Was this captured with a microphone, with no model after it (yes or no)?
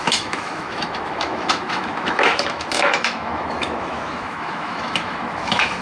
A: no